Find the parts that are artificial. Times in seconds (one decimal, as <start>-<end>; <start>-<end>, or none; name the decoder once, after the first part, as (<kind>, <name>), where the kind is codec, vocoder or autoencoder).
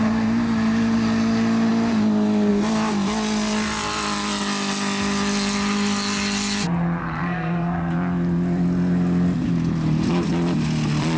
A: 7.0-7.9 (codec, SNAC)